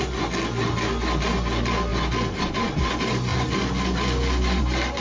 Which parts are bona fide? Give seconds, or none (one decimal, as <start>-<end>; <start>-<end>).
0.0-5.0